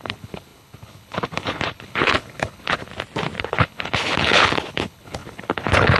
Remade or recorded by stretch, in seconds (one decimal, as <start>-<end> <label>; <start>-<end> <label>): 0.0-2.9 remade; 2.9-3.4 recorded; 3.4-6.0 remade